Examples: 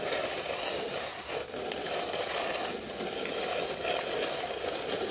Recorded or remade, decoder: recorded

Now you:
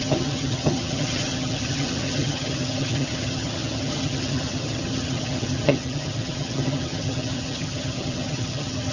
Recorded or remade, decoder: remade, vocoder, HiFi-GAN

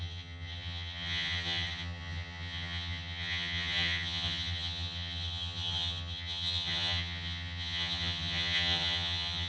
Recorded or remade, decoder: remade, vocoder, HiFi-GAN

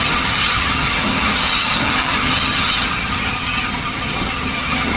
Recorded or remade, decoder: remade, vocoder, HiFi-GAN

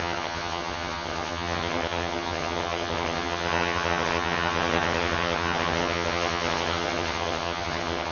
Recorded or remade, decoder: remade, vocoder, HiFi-GAN